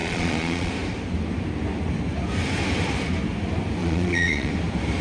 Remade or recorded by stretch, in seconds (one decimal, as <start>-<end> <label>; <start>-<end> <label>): 0.0-0.7 remade; 0.7-3.8 recorded; 3.8-4.5 remade; 4.5-5.0 recorded